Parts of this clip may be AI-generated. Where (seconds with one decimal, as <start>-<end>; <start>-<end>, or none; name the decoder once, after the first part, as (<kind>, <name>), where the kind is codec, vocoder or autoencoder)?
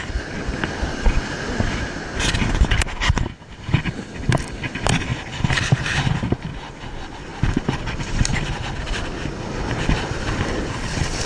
none